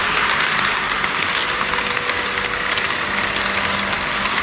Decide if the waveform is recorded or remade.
recorded